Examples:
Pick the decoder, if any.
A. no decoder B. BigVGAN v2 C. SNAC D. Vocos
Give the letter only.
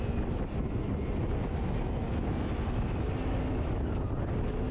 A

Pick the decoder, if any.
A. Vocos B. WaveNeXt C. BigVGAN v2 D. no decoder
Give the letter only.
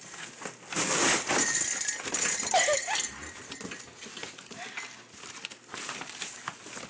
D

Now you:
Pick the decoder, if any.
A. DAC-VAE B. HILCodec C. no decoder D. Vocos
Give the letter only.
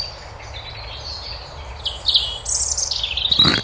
C